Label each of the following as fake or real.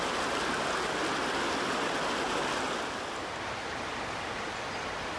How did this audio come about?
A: real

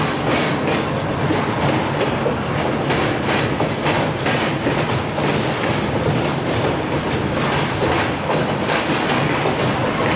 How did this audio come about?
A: real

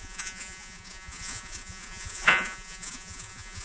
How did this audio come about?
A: fake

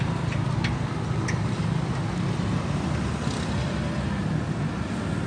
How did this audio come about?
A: real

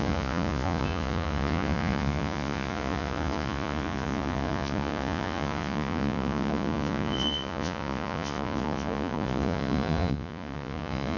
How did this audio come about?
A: fake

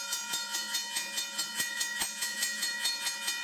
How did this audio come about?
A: fake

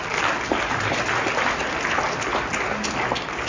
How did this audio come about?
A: real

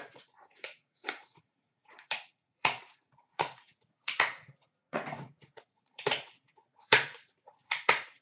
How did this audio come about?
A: fake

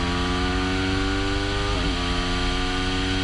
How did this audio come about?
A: real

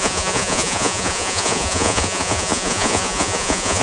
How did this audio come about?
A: fake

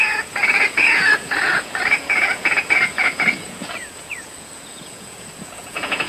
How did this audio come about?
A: fake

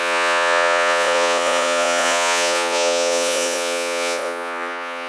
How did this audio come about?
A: fake